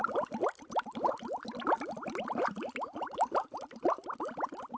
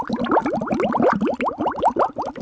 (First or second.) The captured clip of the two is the second